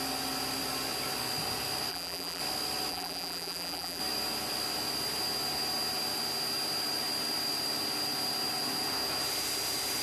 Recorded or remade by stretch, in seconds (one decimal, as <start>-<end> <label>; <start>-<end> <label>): 0.0-1.9 recorded; 1.9-2.4 remade; 2.4-2.9 recorded; 2.9-4.0 remade; 4.0-10.0 recorded